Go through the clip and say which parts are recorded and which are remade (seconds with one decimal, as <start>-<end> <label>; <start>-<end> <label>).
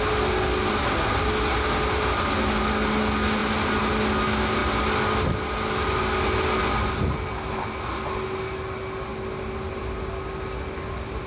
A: 0.0-11.3 recorded